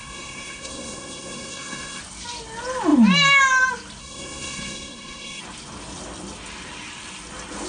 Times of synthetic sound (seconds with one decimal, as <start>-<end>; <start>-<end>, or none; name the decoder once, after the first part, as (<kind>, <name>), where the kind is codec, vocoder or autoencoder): 0.0-2.0 (codec, SNAC); 4.0-5.4